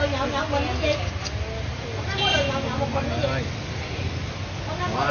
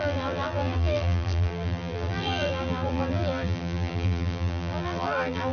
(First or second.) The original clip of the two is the first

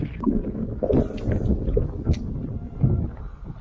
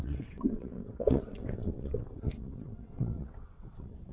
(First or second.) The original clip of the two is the first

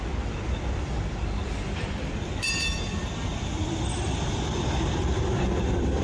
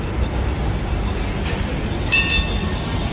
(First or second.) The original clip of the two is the second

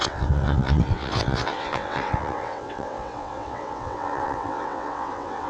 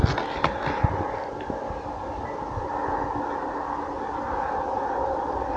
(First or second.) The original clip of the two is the second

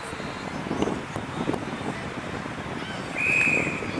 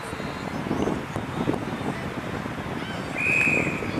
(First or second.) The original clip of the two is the second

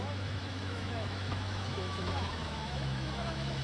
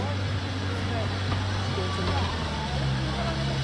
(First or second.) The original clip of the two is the second